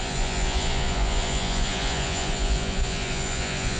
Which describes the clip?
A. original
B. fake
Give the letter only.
B